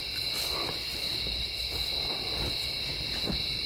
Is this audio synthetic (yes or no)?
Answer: no